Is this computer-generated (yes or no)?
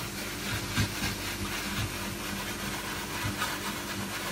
no